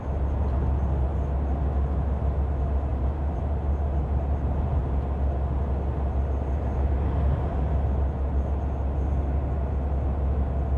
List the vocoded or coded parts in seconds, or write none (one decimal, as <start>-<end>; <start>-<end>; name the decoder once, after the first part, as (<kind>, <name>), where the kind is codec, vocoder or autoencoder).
2.9-4.8 (vocoder, BigVGAN v2)